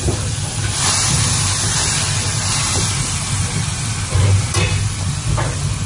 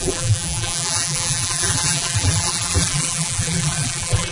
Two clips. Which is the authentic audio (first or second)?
first